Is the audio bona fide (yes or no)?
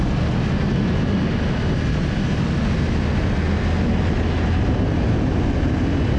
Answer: yes